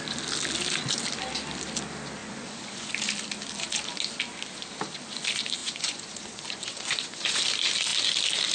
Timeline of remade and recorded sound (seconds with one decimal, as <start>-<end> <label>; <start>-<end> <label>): 0.0-2.2 recorded; 2.2-2.9 remade; 2.9-5.6 recorded; 5.6-7.4 remade; 7.4-8.5 recorded